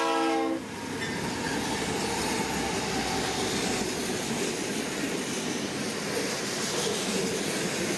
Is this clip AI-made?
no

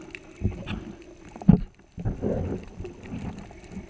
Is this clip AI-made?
no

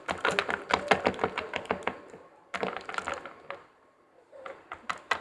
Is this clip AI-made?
no